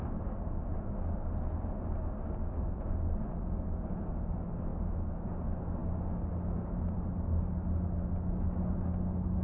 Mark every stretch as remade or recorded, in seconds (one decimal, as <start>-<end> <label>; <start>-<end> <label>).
0.0-9.4 recorded